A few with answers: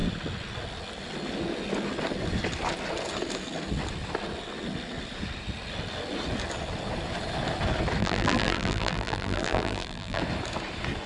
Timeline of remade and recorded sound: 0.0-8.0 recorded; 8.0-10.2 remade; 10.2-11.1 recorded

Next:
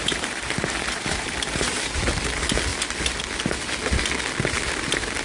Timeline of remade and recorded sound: 0.0-2.0 remade; 2.0-5.2 recorded

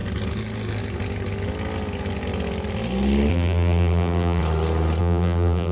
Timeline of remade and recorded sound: 0.0-3.3 recorded; 3.3-4.4 remade; 4.4-5.0 recorded; 5.0-5.7 remade

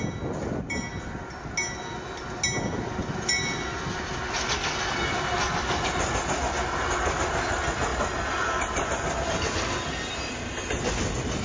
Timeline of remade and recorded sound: 0.0-11.4 recorded

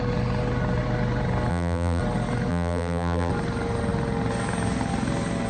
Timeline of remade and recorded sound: 0.0-1.5 recorded; 1.5-2.0 remade; 2.0-2.5 recorded; 2.5-3.3 remade; 3.3-5.5 recorded

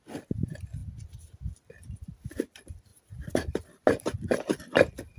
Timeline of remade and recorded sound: 0.0-5.2 recorded

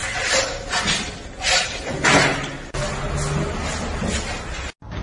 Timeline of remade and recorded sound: 0.0-5.0 recorded

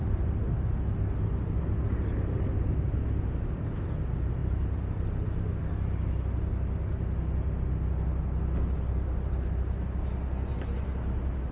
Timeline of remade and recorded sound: 0.0-11.5 recorded